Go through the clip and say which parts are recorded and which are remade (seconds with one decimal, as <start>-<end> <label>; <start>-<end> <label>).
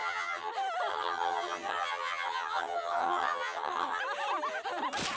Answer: 0.0-0.5 remade; 0.5-0.9 recorded; 0.9-4.0 remade; 4.0-5.2 recorded